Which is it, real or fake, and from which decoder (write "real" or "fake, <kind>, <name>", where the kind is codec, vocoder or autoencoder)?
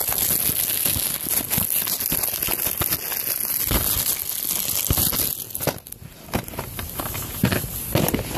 real